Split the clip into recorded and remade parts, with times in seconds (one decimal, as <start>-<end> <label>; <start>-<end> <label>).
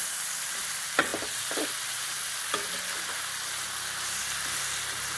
0.0-5.2 recorded